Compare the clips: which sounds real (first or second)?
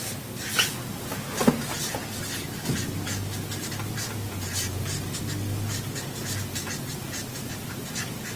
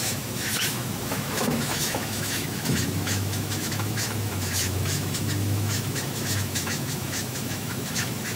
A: first